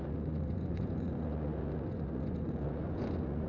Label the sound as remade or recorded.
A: remade